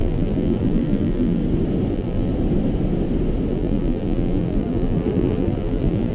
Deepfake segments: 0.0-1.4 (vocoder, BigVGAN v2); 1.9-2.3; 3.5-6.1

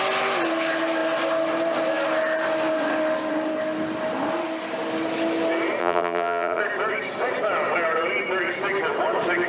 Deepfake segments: 5.8-6.6 (vocoder, BigVGAN v2)

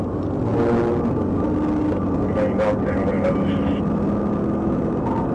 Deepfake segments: none

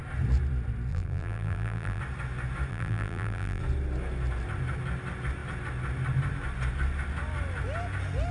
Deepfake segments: 0.9-2.0 (vocoder, BigVGAN v2); 2.7-3.6

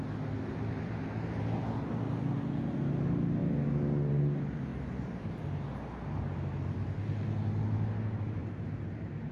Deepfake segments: 0.6-1.4 (vocoder, BigVGAN v2); 4.7-5.3; 8.4-9.3

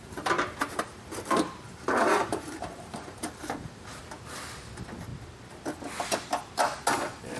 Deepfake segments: 0.0-4.0 (vocoder, BigVGAN v2)

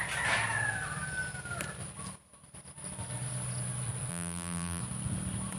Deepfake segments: 4.1-4.8 (vocoder, BigVGAN v2)